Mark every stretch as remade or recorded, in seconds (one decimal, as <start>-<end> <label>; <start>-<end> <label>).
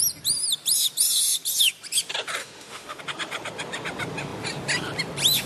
0.0-2.4 recorded; 2.4-3.0 remade; 3.0-5.5 recorded